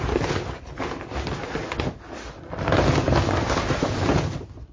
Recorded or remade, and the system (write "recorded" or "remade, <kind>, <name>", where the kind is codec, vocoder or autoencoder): recorded